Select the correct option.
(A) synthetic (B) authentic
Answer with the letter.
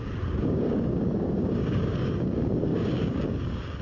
A